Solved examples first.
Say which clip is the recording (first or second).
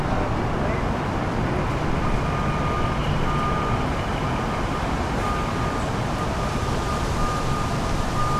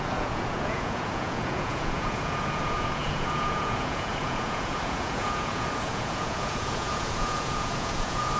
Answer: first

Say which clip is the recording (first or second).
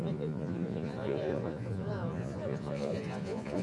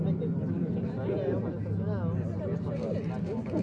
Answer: second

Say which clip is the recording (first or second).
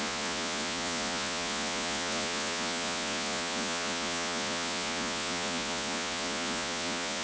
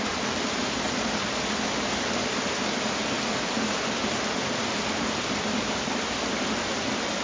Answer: second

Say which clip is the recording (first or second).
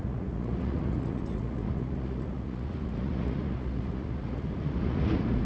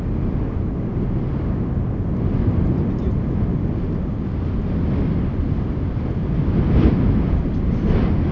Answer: second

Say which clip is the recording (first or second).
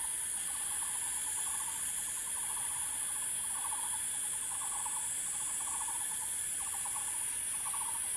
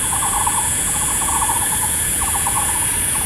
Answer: first